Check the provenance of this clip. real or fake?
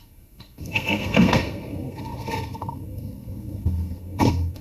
fake